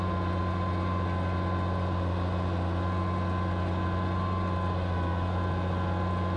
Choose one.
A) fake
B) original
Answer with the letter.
B